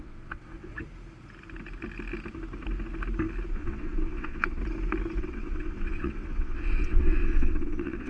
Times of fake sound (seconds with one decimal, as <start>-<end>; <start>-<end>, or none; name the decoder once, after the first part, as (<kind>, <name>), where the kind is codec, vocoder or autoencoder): 0.0-0.7 (vocoder, WaveNeXt); 3.5-4.6; 5.2-8.1

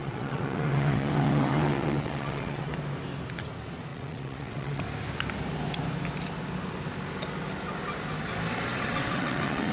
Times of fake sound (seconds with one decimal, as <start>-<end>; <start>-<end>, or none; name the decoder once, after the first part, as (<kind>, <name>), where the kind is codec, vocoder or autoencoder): 0.0-2.7 (vocoder, WaveNeXt); 3.9-4.8; 8.7-9.7

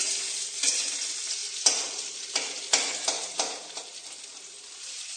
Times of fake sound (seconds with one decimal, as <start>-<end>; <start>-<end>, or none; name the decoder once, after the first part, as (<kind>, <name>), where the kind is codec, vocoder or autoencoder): none